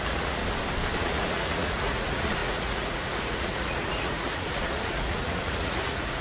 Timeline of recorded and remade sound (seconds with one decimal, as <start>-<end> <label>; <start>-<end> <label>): 0.0-0.4 remade; 0.4-1.0 recorded; 1.0-6.2 remade

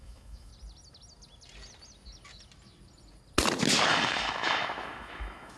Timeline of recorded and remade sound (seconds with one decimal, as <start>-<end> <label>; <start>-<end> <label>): 0.0-0.5 remade; 0.5-3.9 recorded; 3.9-5.6 remade

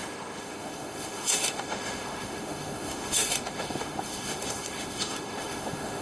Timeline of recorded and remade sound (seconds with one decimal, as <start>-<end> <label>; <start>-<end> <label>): 0.0-6.0 remade

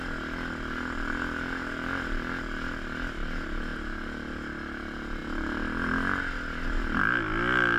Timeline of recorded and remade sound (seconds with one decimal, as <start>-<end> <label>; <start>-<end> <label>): 0.0-7.8 recorded

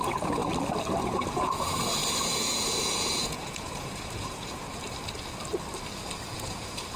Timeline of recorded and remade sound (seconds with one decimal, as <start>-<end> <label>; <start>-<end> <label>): 0.0-0.4 remade; 0.4-1.0 recorded; 1.0-4.7 remade; 4.7-6.3 recorded; 6.3-7.0 remade

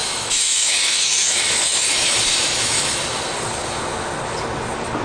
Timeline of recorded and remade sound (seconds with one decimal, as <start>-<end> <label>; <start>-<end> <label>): 0.0-3.0 remade; 3.0-5.0 recorded